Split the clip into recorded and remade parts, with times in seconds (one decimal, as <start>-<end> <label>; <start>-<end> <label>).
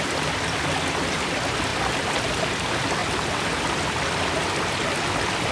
0.0-5.5 recorded